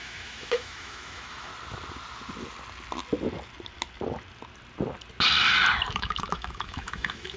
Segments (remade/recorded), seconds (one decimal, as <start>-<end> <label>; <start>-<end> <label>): 0.0-1.5 remade; 1.5-5.9 recorded; 5.9-7.4 remade

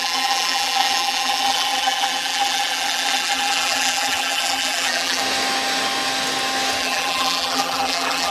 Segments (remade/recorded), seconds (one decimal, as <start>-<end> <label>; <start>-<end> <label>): 0.0-5.2 remade; 5.2-6.8 recorded; 6.8-8.3 remade

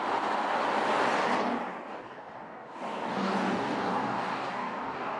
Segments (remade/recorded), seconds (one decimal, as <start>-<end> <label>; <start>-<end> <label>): 0.0-1.9 recorded; 1.9-5.2 remade